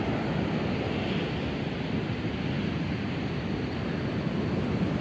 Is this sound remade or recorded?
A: recorded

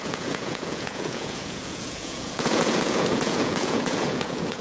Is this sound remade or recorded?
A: remade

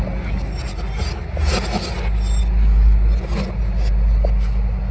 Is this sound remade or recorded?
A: recorded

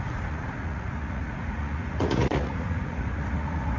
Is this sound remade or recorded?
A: remade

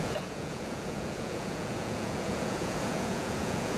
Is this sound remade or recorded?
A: remade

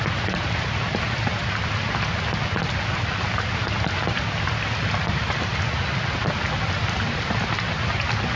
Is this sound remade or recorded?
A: recorded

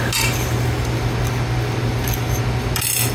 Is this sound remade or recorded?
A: recorded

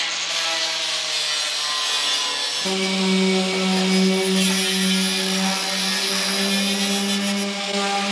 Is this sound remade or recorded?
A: recorded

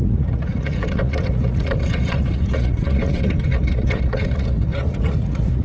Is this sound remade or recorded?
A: remade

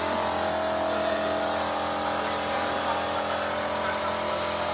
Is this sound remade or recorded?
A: recorded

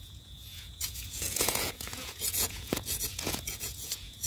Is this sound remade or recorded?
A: remade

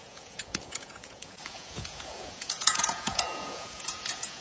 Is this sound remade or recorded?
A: remade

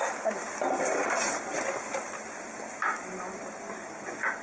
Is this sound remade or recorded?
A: recorded